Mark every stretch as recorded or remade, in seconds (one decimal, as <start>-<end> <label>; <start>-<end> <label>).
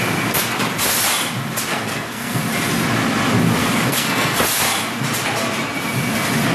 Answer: 0.0-1.7 recorded; 1.7-2.4 remade; 2.4-3.6 recorded; 3.6-4.4 remade; 4.4-6.5 recorded